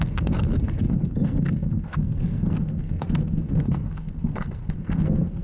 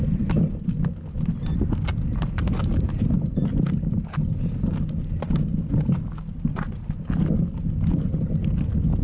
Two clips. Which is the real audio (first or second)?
second